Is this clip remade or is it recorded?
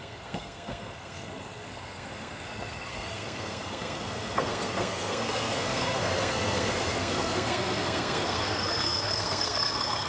remade